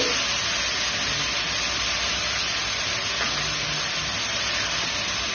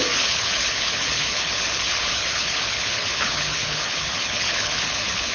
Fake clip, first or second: second